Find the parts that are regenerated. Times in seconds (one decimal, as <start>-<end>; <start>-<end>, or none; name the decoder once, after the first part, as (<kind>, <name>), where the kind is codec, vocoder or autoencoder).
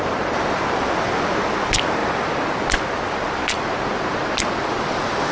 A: none